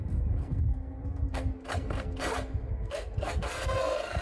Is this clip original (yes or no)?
no